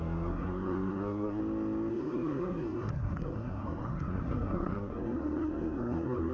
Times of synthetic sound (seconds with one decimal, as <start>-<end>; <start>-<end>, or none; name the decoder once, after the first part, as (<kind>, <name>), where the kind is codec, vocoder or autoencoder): 0.0-1.4 (codec, SNAC); 1.9-6.3